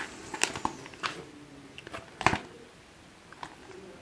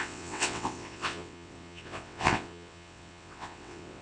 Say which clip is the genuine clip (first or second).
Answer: first